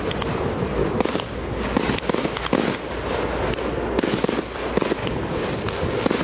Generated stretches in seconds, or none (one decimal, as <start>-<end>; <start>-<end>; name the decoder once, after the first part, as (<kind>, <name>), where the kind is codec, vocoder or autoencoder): 0.8-1.8 (codec, DAC); 5.0-5.5